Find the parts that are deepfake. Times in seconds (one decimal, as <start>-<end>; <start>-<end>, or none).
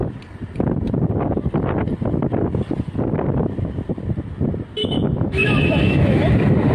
4.8-6.3